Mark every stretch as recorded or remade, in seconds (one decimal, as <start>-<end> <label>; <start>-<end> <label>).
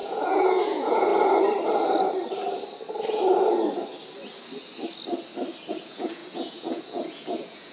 0.0-1.1 remade; 1.1-5.7 recorded; 5.7-7.7 remade